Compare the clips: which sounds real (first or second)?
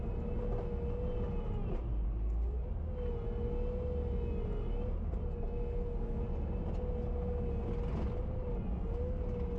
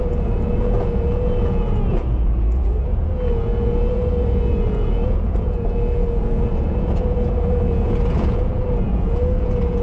first